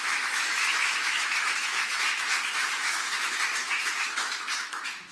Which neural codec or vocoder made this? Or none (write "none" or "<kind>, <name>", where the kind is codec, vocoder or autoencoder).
autoencoder, DAC-VAE